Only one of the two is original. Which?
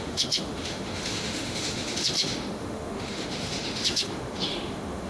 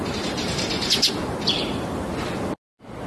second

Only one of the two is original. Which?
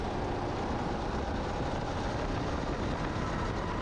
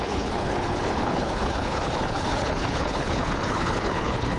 first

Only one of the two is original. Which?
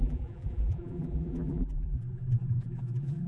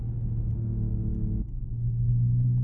second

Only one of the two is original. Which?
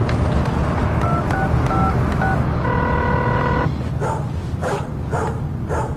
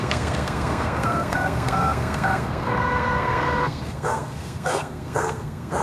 first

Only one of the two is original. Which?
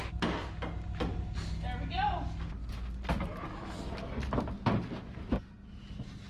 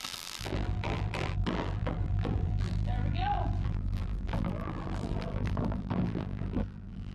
first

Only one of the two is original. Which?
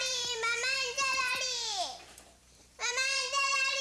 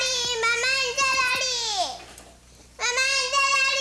second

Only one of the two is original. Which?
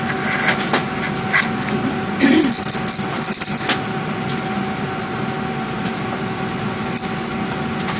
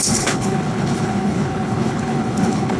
first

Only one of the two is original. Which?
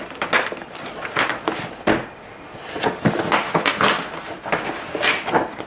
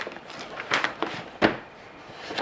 first